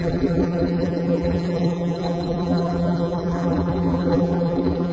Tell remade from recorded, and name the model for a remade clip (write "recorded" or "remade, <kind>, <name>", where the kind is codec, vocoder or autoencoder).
remade, vocoder, BigVGAN v2